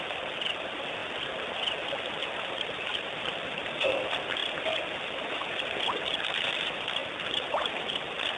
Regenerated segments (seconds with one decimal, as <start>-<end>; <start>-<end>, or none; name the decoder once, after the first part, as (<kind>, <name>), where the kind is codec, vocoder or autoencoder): 0.0-1.0 (vocoder, BigVGAN v2); 2.5-4.4; 6.5-7.0; 7.6-8.4